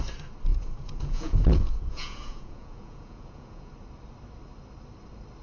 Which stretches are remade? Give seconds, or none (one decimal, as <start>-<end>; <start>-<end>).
0.5-3.7